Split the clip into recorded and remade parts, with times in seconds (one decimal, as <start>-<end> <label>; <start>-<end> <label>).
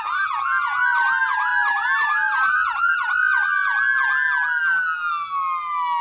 0.0-6.0 recorded